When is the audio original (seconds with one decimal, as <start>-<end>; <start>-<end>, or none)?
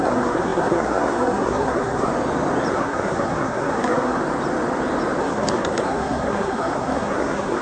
2.1-2.7; 4.2-5.2